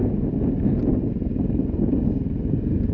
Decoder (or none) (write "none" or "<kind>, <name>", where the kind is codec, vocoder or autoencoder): none